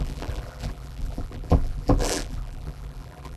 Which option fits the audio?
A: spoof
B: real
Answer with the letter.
A